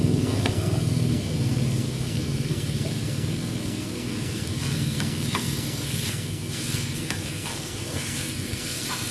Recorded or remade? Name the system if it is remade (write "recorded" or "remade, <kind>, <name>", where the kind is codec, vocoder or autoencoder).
remade, codec, SNAC